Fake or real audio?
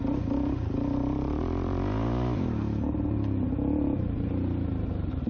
real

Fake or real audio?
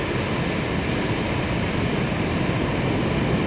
real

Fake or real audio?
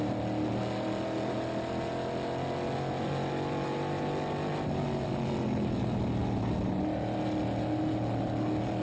real